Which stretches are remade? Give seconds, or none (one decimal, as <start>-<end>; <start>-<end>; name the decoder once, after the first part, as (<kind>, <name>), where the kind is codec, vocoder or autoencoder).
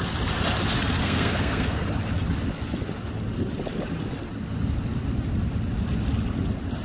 1.0-1.8 (codec, SNAC)